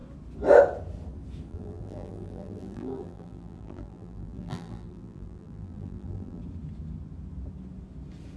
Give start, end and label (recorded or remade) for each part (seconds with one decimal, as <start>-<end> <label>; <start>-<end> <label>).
0.0-1.5 recorded; 1.5-6.4 remade; 6.4-8.4 recorded